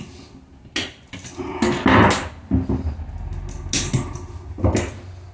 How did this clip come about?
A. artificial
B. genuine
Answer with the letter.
B